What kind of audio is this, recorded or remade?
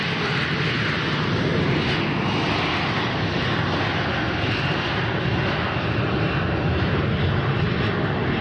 recorded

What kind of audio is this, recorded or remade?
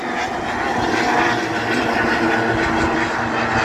recorded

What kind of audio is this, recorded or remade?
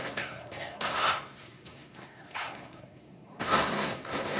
remade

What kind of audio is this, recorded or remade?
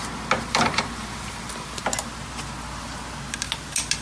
recorded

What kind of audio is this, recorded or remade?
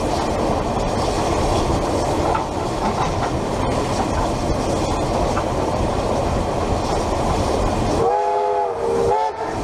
recorded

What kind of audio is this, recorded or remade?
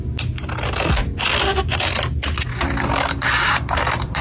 recorded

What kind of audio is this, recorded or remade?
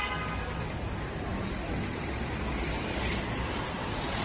recorded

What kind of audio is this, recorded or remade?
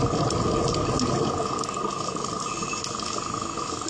recorded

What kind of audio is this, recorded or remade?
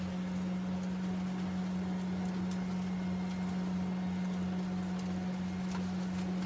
recorded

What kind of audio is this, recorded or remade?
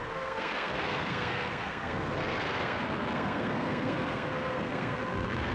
remade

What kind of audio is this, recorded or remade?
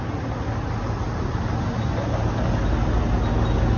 recorded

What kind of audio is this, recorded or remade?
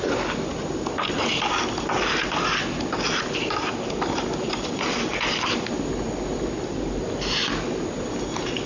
recorded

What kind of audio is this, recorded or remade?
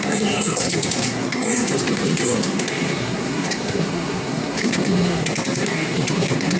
remade